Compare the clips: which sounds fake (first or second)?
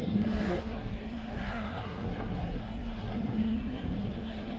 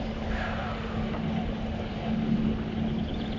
first